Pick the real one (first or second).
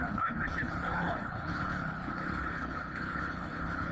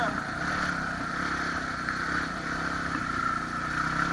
second